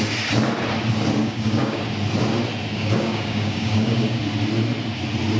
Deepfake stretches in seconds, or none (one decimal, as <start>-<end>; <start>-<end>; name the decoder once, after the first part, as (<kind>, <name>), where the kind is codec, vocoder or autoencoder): 1.2-1.8 (codec, DAC); 2.7-4.2